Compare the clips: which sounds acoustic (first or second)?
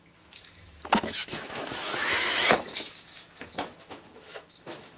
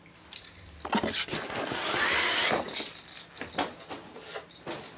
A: second